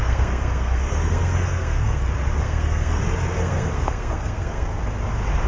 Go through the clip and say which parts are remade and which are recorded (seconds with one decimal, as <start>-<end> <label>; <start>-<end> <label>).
0.0-2.0 remade; 2.0-2.4 recorded; 2.4-3.0 remade; 3.0-3.4 recorded; 3.4-4.8 remade; 4.8-5.5 recorded